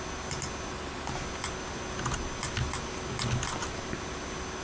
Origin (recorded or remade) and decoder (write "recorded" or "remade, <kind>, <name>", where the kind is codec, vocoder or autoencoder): recorded